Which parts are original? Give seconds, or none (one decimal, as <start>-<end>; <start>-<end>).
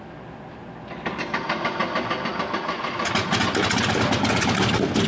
0.0-5.1